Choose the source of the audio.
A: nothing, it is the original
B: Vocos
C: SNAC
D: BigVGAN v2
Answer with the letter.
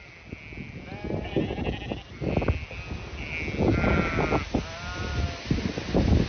A